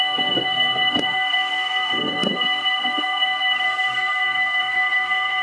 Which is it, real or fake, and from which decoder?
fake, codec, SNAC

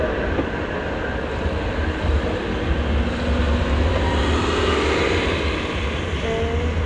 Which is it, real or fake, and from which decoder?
real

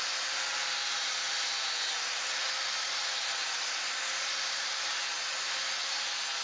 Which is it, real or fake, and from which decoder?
real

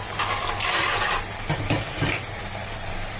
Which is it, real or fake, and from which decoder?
real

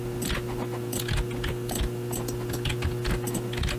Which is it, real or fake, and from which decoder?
real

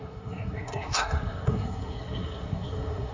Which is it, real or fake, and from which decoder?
fake, codec, SNAC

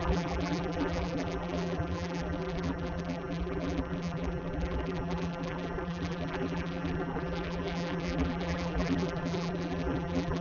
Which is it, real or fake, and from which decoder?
fake, vocoder, BigVGAN v2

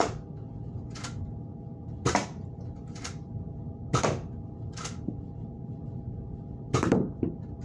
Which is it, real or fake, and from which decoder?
fake, vocoder, BigVGAN v2